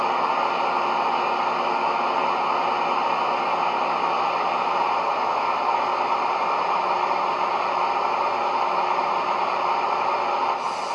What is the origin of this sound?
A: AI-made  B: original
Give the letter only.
B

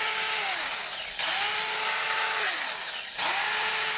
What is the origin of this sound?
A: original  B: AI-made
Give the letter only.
A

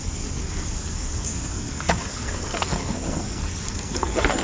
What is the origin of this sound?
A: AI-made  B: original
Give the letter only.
A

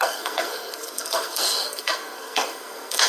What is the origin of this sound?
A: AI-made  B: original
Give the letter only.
A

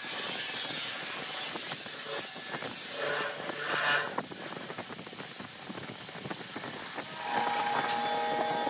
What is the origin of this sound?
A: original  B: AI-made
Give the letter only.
A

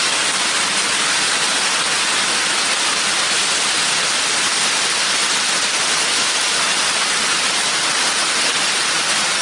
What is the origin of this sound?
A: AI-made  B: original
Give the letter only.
B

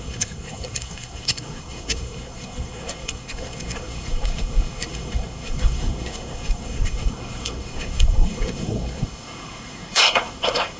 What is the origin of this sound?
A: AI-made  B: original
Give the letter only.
A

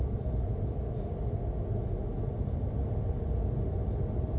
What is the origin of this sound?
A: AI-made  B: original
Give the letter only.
B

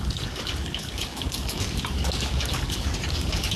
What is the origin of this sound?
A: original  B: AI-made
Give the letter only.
B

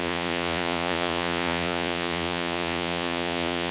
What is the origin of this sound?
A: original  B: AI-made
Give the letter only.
B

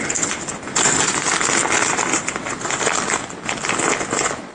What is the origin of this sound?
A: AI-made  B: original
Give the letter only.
B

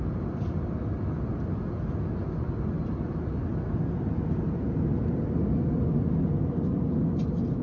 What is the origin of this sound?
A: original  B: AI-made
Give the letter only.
A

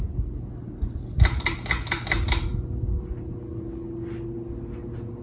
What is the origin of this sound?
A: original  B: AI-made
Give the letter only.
A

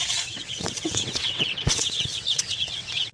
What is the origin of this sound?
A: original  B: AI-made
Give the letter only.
B